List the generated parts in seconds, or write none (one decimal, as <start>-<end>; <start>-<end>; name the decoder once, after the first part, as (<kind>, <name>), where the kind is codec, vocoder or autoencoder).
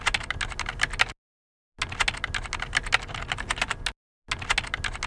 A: none